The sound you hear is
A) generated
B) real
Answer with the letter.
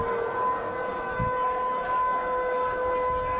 B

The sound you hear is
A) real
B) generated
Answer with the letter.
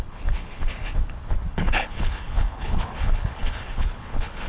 B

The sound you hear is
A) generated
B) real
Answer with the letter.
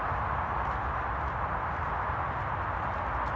B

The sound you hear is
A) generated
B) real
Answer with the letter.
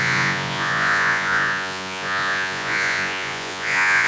A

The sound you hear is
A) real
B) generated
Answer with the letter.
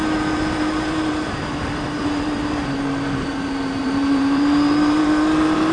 B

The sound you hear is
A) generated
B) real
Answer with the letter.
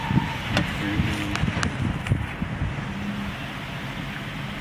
B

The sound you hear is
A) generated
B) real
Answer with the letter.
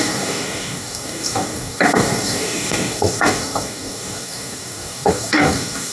A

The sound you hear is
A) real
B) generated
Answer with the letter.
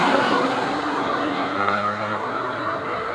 B